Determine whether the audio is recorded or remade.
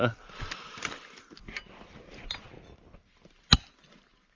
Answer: recorded